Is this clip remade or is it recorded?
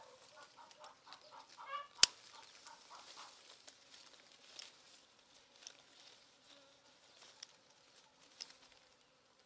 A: recorded